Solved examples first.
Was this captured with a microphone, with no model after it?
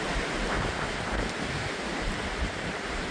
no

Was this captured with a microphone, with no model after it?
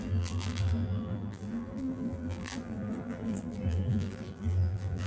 no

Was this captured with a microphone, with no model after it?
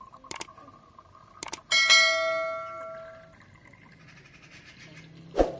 yes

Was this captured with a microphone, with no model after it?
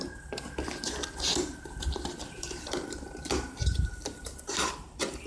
no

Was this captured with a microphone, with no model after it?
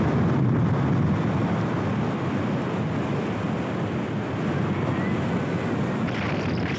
yes